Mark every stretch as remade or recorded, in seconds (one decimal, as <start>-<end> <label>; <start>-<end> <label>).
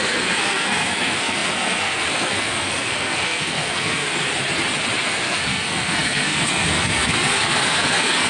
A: 0.0-4.3 remade; 4.3-5.0 recorded; 5.0-8.3 remade